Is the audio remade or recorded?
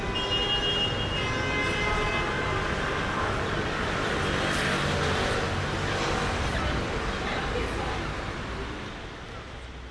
recorded